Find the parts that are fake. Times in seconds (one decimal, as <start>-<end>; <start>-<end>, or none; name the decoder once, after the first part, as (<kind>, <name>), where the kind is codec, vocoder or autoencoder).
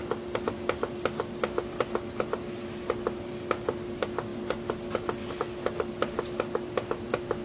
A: none